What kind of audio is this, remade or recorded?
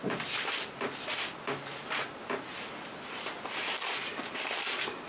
recorded